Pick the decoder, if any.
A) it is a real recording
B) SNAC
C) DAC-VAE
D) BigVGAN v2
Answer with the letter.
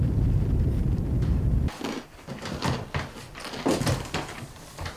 D